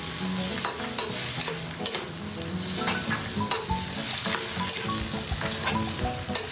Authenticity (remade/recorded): recorded